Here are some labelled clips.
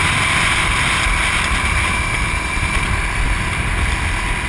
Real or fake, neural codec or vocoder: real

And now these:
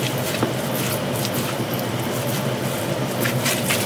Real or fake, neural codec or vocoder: real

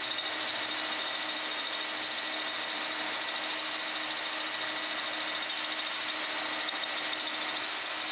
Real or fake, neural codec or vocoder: real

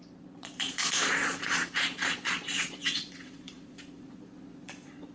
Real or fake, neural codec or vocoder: fake, vocoder, Vocos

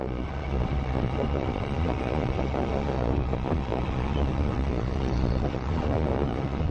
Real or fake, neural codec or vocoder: fake, vocoder, Vocos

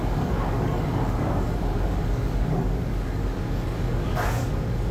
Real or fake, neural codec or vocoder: fake, codec, DAC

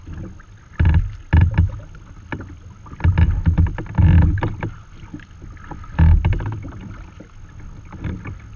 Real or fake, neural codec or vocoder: real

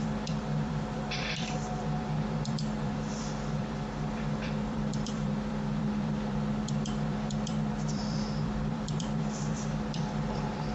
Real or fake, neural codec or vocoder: fake, vocoder, BigVGAN v2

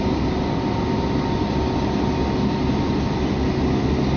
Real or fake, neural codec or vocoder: real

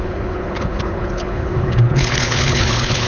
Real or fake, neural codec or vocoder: fake, codec, HILCodec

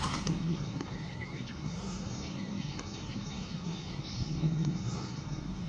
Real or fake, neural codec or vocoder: fake, codec, SNAC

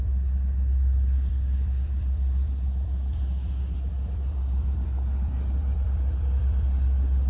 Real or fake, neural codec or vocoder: fake, vocoder, BigVGAN v2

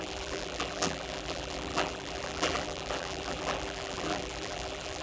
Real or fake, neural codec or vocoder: fake, vocoder, BigVGAN v2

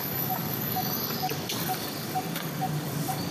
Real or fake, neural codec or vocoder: fake, codec, DAC